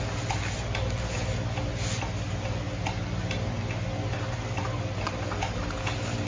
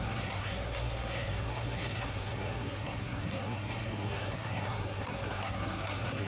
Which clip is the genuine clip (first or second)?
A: first